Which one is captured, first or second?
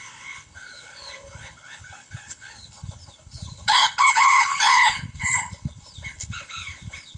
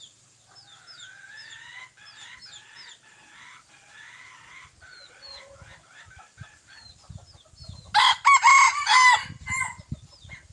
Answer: second